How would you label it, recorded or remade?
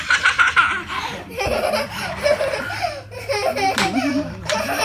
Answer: remade